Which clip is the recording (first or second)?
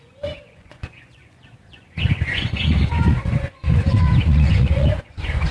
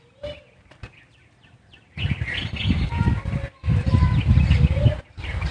second